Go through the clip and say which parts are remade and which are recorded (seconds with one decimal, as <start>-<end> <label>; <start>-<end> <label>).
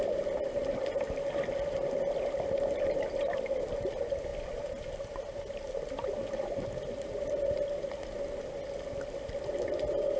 0.0-10.2 recorded